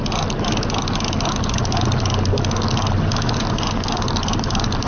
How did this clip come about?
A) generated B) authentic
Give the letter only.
B